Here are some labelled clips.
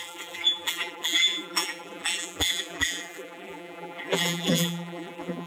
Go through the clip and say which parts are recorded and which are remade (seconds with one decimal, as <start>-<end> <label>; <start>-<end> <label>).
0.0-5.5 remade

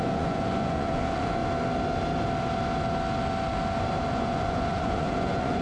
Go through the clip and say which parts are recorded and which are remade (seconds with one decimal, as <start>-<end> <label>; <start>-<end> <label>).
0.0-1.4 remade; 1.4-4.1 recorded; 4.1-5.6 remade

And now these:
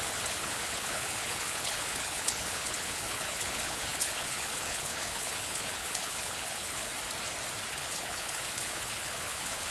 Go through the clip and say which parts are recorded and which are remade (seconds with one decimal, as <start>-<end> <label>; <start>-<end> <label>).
0.0-6.9 remade; 6.9-7.7 recorded; 7.7-9.7 remade

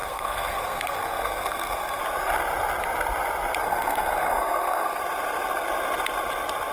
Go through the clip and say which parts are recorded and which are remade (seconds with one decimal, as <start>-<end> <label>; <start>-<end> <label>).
0.0-2.0 remade; 2.0-3.6 recorded; 3.6-5.0 remade; 5.0-6.7 recorded

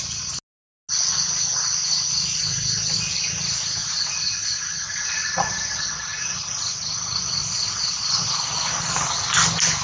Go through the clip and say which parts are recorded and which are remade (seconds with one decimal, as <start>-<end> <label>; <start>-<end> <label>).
0.0-3.8 recorded; 3.8-5.2 remade; 5.2-9.8 recorded